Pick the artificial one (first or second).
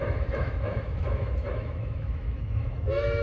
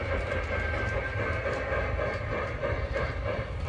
first